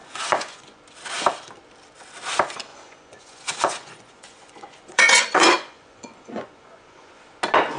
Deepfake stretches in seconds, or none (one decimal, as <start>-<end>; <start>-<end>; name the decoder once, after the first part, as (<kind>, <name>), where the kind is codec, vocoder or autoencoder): 0.0-0.8 (vocoder, Vocos); 2.7-7.2